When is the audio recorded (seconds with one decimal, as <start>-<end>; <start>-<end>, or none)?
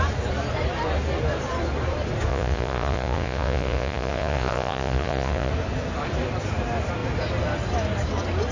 0.0-2.3; 5.5-8.5